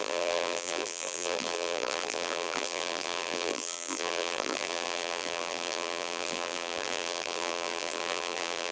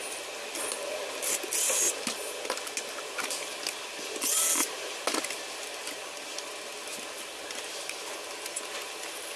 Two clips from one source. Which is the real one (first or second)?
second